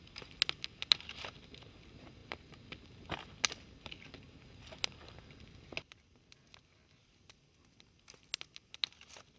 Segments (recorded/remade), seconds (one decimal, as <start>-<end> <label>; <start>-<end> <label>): 0.0-9.4 recorded